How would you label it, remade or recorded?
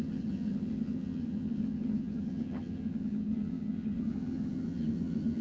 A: remade